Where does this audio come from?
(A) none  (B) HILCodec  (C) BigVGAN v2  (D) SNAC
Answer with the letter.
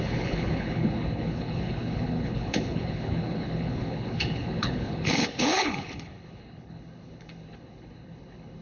B